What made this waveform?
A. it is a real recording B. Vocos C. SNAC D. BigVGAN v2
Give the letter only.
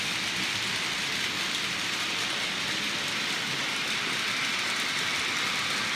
A